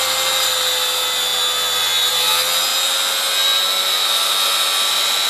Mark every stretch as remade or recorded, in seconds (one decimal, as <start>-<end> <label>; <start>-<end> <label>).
0.0-5.3 recorded